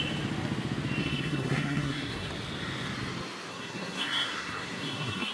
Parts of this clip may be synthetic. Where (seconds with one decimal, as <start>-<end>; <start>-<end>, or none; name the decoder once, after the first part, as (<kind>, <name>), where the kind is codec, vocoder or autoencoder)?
1.0-2.3 (codec, SNAC); 3.5-5.3